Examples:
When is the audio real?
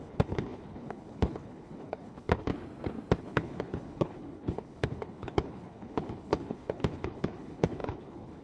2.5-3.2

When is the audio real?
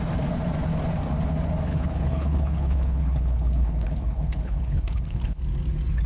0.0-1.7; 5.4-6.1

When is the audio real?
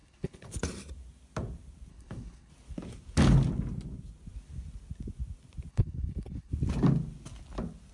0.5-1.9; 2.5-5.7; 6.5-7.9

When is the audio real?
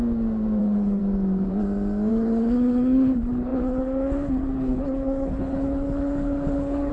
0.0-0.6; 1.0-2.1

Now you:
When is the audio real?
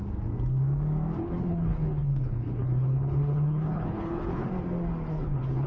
0.0-1.1; 4.5-5.1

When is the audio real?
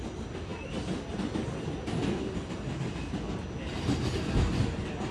0.0-5.1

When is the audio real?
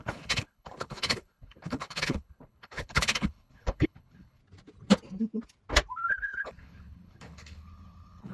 4.4-6.1